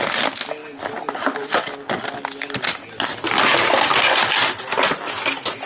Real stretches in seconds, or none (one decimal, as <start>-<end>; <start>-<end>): 0.0-5.7